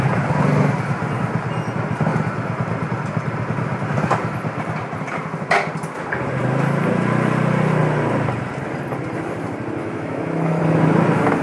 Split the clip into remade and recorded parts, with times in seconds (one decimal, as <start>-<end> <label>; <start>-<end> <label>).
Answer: 0.0-9.8 recorded; 9.8-10.6 remade; 10.6-11.4 recorded

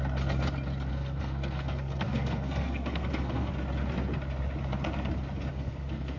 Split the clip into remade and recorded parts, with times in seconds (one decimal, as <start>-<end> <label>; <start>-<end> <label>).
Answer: 0.0-0.9 recorded; 0.9-3.5 remade; 3.5-5.5 recorded; 5.5-6.2 remade

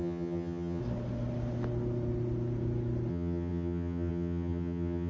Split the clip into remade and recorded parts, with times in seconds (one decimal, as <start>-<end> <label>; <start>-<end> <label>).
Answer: 0.0-0.8 remade; 0.8-3.1 recorded; 3.1-5.1 remade

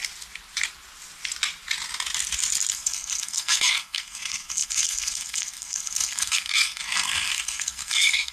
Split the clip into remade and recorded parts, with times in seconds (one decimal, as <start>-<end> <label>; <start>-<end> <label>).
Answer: 0.0-2.7 recorded; 2.7-8.3 remade